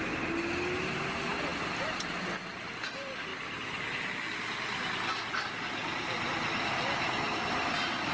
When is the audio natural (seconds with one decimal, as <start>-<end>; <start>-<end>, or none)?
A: 0.0-8.1